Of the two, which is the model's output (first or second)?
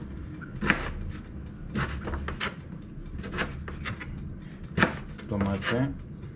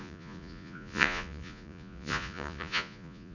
second